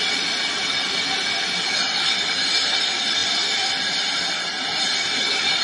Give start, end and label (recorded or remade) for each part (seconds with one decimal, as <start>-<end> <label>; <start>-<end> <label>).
0.0-5.6 recorded